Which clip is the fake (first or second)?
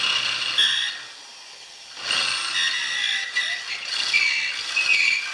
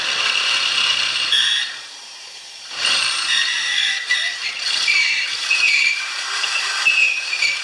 second